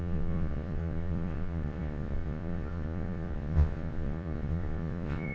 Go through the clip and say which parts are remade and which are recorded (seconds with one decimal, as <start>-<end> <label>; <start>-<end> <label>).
0.0-5.3 remade

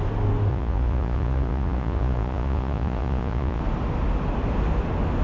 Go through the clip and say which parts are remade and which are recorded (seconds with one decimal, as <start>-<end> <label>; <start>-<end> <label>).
0.0-0.5 recorded; 0.5-3.6 remade; 3.6-5.2 recorded

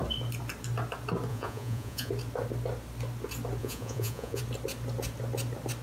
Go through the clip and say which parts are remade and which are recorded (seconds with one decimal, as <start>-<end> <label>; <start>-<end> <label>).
0.0-1.3 recorded; 1.3-2.1 remade; 2.1-3.6 recorded; 3.6-4.4 remade; 4.4-5.8 recorded